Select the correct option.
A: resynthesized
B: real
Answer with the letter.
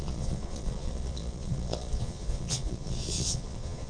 A